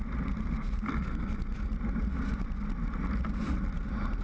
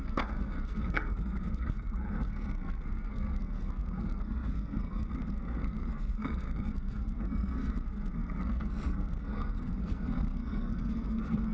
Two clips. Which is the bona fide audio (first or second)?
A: first